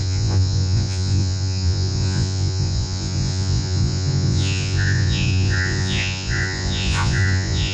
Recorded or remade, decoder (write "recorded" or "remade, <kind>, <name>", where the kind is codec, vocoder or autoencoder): remade, vocoder, Vocos